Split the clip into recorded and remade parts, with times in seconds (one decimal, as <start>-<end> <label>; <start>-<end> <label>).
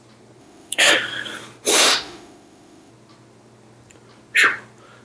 0.0-0.4 recorded; 0.4-0.9 remade; 0.9-1.7 recorded; 1.7-2.9 remade; 2.9-5.0 recorded